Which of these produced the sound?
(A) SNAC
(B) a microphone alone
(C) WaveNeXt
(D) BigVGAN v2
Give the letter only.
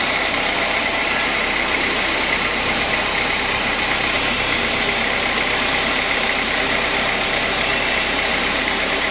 D